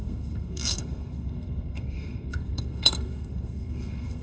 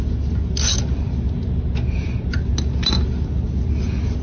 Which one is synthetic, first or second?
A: first